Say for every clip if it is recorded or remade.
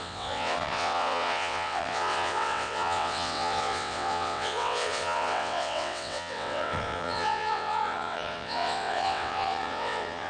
remade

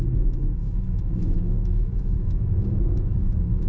remade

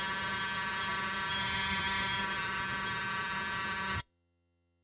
remade